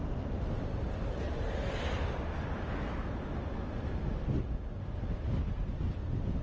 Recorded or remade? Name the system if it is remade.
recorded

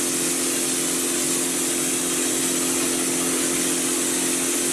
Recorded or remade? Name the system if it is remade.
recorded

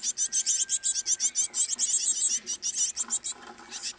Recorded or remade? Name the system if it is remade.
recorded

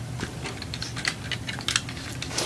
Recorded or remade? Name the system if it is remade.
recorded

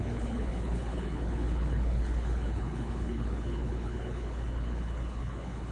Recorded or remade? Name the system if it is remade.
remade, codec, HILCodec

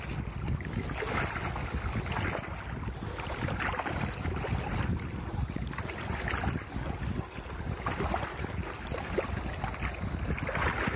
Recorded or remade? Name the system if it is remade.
recorded